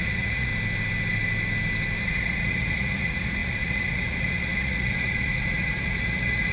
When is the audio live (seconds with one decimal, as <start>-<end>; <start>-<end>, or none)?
0.5-2.0